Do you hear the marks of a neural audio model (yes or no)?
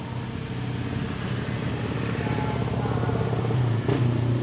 no